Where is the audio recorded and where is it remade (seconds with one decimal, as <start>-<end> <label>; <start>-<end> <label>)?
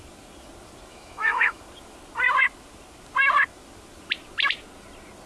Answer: 0.0-0.9 recorded; 0.9-1.6 remade; 1.6-5.3 recorded